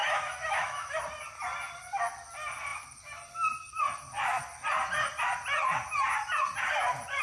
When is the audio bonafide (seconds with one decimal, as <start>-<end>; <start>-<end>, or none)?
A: 1.0-7.2